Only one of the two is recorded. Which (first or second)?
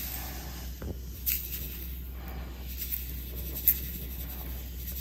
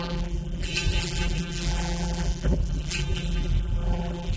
first